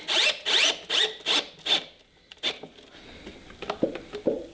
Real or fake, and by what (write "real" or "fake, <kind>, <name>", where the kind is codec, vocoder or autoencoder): real